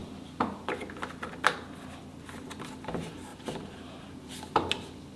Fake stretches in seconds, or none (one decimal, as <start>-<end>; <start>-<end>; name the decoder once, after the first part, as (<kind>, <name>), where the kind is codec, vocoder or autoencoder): 3.3-4.3 (vocoder, BigVGAN v2)